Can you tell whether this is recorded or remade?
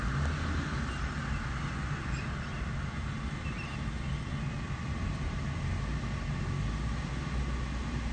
recorded